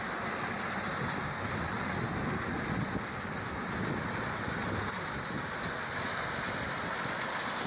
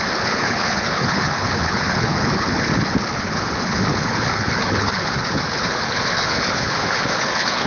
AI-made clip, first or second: second